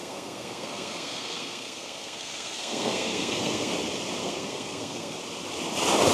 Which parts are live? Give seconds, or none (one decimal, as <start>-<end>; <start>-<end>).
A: 3.7-4.2; 5.2-6.1